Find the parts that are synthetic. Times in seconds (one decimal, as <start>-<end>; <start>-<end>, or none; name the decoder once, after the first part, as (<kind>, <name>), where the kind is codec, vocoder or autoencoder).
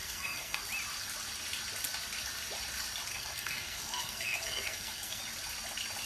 0.0-0.6 (codec, SNAC); 3.1-5.2